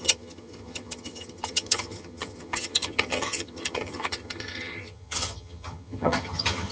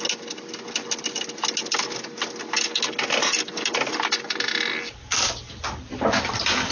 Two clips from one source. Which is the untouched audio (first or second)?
second